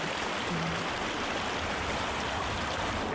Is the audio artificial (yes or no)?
no